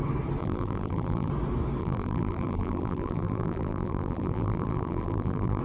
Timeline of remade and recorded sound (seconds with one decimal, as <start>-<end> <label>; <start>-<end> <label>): 0.0-0.4 recorded; 0.4-1.3 remade; 1.3-1.8 recorded; 1.8-5.6 remade